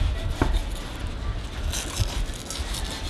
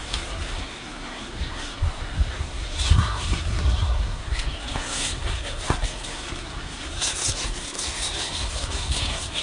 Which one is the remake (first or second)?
second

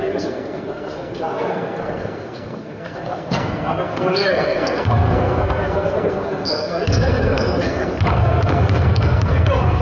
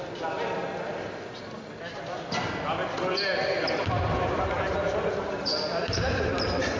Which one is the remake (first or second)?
first